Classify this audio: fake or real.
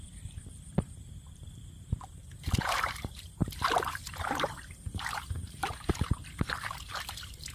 fake